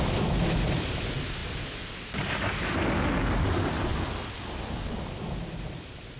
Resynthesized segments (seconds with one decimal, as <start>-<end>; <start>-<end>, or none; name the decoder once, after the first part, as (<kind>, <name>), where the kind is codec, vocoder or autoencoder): none